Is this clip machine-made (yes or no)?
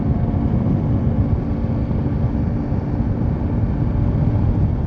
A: no